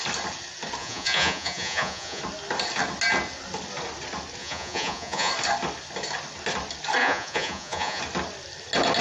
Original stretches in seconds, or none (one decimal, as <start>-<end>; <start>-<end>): 0.0-0.8; 2.2-4.4; 5.3-7.0; 8.0-9.0

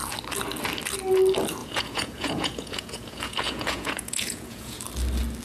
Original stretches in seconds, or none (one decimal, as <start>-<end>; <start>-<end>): 0.0-1.6; 4.8-5.4